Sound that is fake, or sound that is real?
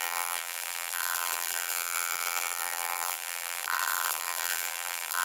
fake